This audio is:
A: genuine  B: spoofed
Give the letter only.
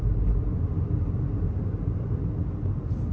A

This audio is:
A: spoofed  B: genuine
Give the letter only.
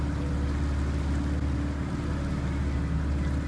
B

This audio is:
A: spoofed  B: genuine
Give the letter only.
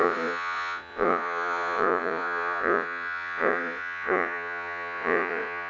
A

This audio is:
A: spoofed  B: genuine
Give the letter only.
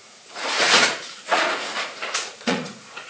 A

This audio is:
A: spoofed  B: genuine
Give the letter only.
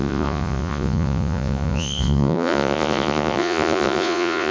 A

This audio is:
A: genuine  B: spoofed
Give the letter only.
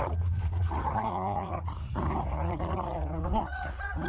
B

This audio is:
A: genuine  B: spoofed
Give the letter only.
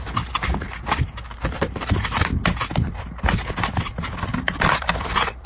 A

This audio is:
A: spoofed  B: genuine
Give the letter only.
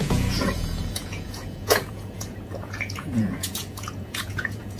A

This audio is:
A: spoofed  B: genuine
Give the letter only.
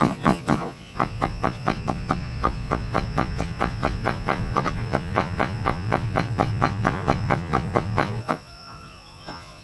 A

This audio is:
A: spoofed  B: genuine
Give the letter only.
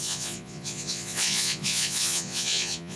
A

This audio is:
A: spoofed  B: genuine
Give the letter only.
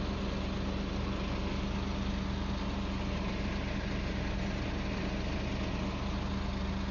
B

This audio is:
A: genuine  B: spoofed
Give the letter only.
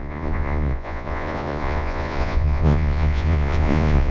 B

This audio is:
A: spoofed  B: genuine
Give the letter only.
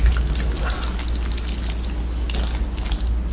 B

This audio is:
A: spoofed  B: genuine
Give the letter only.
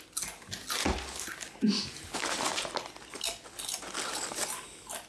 B